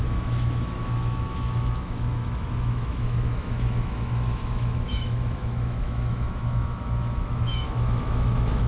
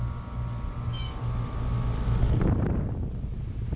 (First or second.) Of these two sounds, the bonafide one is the second